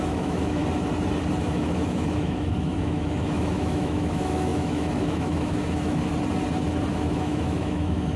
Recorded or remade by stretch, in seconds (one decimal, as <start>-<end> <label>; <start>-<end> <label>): 0.0-0.6 remade; 0.6-1.4 recorded; 1.4-6.1 remade; 6.1-6.9 recorded; 6.9-8.2 remade